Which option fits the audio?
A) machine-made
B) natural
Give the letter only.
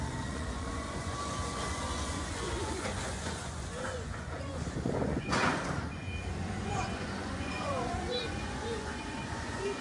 A